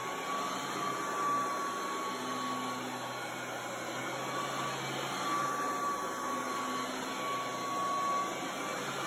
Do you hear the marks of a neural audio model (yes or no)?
no